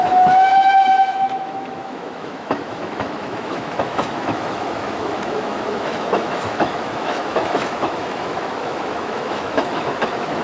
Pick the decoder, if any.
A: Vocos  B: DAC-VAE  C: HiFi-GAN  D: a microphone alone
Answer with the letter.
B